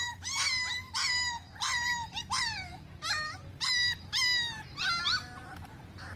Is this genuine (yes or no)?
no